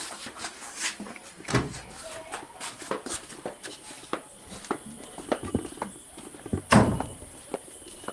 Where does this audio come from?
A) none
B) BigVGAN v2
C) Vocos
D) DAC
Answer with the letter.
B